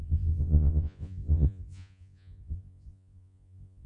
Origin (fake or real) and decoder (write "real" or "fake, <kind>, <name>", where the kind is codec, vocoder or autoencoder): fake, vocoder, Vocos